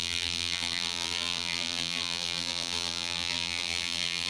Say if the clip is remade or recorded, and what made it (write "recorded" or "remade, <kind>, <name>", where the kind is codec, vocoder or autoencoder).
remade, vocoder, BigVGAN v2